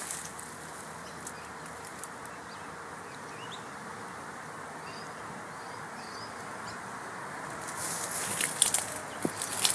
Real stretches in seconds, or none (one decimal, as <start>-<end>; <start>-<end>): 0.0-9.7